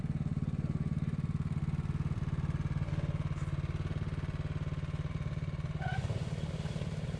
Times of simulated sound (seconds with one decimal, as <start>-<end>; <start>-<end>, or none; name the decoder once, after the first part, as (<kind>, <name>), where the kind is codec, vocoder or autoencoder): 0.0-1.6 (vocoder, BigVGAN v2); 5.1-7.2